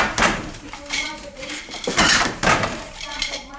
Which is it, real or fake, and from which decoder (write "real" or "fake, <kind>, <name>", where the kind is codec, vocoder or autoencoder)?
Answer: fake, vocoder, BigVGAN v2